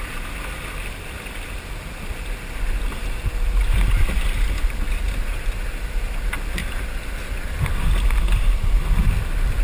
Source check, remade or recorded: recorded